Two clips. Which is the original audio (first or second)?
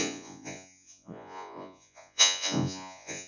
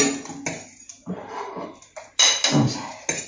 second